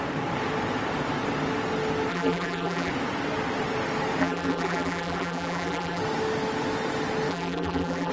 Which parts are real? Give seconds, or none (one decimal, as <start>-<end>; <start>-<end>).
0.0-2.1; 2.9-4.2; 6.0-7.3